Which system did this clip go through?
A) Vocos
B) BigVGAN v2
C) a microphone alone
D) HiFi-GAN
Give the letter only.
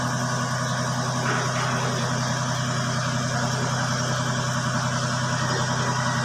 C